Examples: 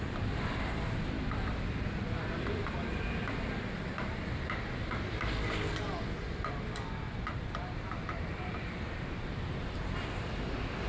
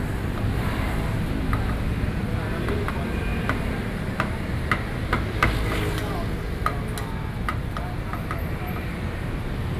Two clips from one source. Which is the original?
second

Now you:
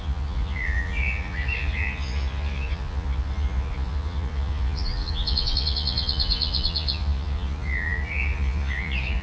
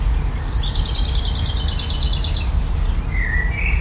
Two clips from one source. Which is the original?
second